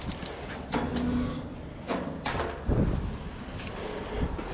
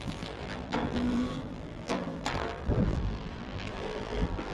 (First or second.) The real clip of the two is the first